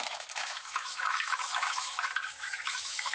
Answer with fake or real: fake